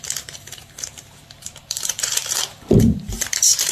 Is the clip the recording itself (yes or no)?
no